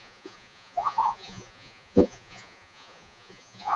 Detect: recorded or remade remade